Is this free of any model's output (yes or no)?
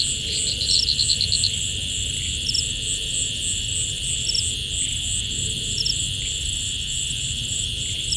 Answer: yes